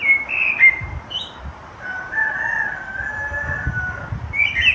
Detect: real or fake real